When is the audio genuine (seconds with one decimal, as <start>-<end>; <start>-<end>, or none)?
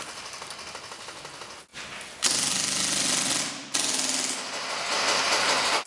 0.0-5.9